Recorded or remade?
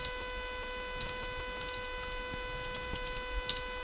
recorded